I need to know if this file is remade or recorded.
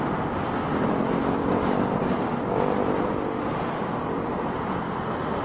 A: recorded